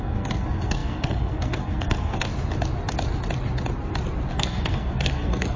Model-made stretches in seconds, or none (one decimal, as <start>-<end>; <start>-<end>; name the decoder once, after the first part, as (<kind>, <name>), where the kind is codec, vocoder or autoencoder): 0.0-2.3 (codec, SNAC); 4.3-5.6